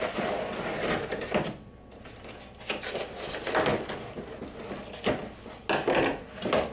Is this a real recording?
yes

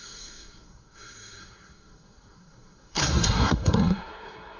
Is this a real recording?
no